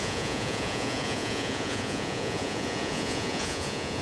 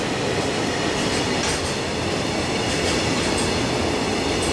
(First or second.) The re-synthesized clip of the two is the first